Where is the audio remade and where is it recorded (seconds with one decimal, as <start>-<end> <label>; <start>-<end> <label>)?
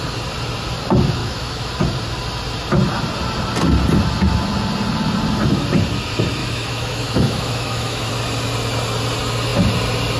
0.0-1.2 recorded; 1.2-1.7 remade; 1.7-6.4 recorded; 6.4-8.1 remade; 8.1-10.2 recorded